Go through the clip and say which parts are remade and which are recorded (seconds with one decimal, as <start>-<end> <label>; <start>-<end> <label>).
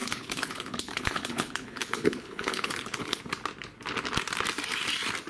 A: 0.0-3.2 remade; 3.2-5.3 recorded